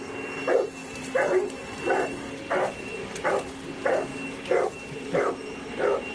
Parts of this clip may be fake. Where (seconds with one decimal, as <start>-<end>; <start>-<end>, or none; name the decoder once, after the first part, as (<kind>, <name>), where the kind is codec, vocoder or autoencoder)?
0.8-2.4 (vocoder, BigVGAN v2)

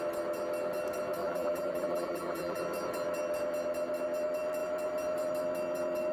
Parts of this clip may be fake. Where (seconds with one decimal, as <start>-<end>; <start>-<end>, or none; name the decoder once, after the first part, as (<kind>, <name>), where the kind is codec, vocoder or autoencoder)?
1.2-2.6 (vocoder, BigVGAN v2)

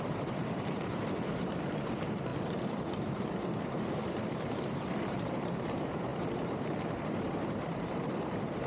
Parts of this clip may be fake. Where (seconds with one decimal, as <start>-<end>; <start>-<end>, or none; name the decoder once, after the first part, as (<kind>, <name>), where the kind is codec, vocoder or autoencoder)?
0.0-8.7 (vocoder, BigVGAN v2)

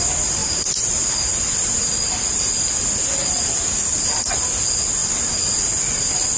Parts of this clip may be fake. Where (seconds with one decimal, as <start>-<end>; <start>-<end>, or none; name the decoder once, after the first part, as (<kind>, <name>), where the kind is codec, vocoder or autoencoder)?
none

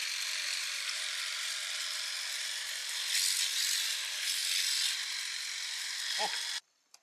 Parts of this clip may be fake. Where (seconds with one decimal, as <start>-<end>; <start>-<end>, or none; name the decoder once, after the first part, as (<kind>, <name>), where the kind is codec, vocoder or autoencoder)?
0.0-2.8 (vocoder, BigVGAN v2); 3.4-7.0